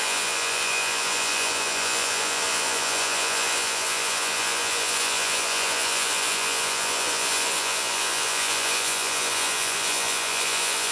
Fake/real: fake